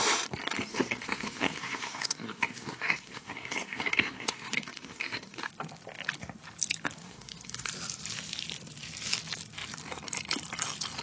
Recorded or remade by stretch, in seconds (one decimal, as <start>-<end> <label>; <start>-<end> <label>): 0.0-0.7 recorded; 0.7-5.5 remade; 5.5-7.0 recorded; 7.0-7.7 remade; 7.7-11.0 recorded